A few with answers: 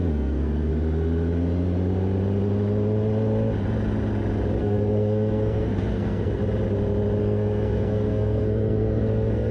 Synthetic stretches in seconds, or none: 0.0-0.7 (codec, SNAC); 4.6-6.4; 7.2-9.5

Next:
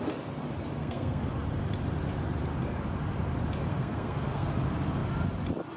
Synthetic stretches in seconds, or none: 0.8-1.3 (codec, SNAC); 3.7-4.5

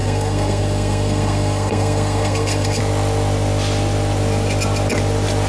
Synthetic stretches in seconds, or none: 0.0-2.8 (codec, SNAC)